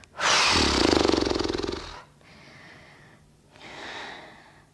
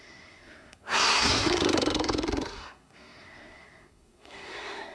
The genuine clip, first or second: first